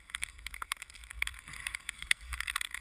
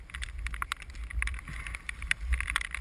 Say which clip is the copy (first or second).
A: first